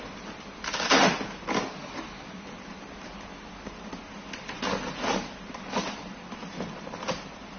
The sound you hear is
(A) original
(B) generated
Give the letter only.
A